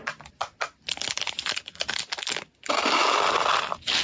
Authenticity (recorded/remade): recorded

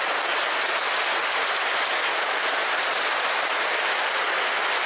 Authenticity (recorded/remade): recorded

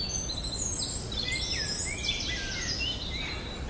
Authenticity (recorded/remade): recorded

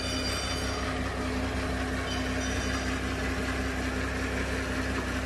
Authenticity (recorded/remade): recorded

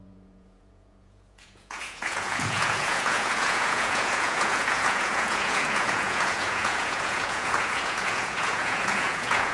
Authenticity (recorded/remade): remade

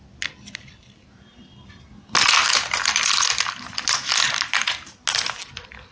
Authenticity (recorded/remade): recorded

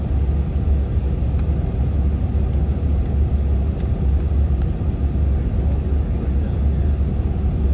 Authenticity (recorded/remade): recorded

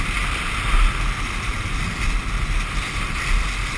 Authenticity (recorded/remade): recorded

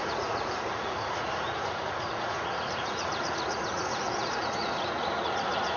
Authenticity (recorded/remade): remade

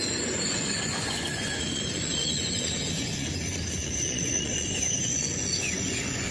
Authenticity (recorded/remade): remade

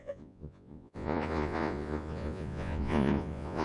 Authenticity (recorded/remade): remade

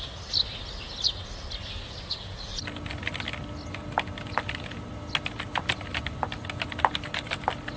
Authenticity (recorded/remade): recorded